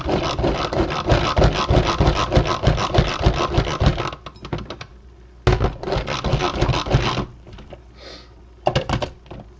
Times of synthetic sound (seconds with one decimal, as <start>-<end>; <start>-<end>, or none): none